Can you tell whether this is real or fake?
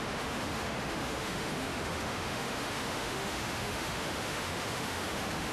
fake